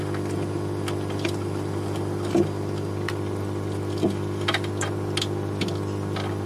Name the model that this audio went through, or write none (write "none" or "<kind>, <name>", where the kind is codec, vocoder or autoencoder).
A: none